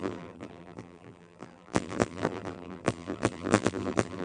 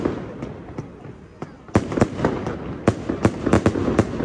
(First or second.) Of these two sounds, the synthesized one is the first